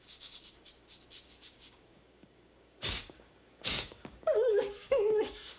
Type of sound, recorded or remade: remade